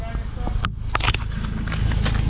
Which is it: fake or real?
real